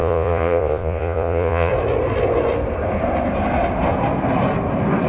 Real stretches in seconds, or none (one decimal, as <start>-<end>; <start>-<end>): 1.7-5.1